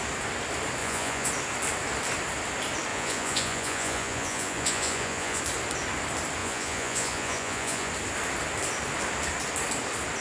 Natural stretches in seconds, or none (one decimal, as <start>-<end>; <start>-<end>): 0.0-0.8; 1.3-2.9; 5.4-6.4; 7.9-10.2